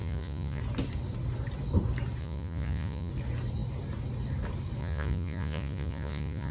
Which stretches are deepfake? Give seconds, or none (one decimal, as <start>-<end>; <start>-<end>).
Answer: 0.0-0.6; 2.2-3.1; 4.8-6.5